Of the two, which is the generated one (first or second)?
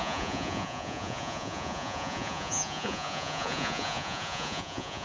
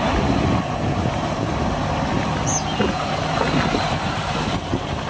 first